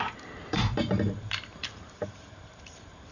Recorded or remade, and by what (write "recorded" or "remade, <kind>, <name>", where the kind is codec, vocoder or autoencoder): remade, vocoder, BigVGAN v2